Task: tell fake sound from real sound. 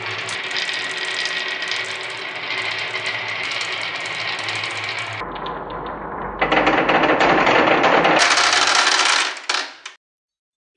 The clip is real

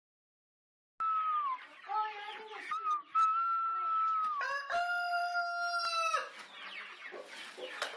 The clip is real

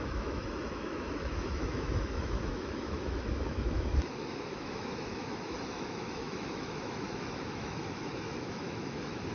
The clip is fake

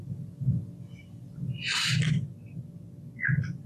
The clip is real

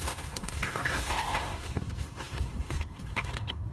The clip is fake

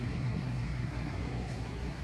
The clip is fake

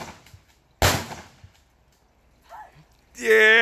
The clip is real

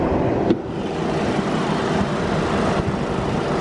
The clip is real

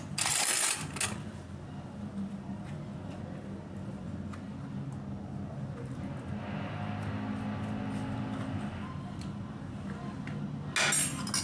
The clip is real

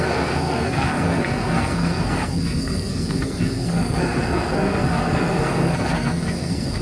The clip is fake